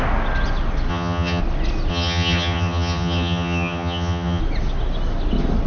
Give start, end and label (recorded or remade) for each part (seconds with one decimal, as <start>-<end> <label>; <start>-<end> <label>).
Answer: 0.0-0.9 recorded; 0.9-1.4 remade; 1.4-1.9 recorded; 1.9-4.4 remade; 4.4-5.7 recorded